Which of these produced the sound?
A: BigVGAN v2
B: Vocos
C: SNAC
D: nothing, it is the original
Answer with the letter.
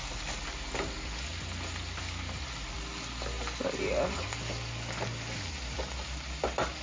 D